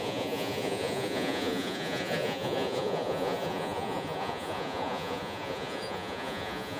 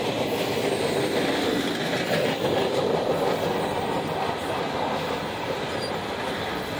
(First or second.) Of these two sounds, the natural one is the second